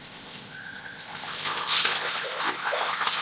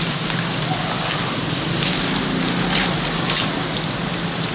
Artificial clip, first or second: first